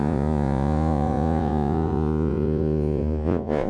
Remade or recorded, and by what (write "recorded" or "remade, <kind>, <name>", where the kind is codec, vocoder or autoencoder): remade, vocoder, Vocos